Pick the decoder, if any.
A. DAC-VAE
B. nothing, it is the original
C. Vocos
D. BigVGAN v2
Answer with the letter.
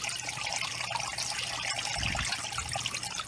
B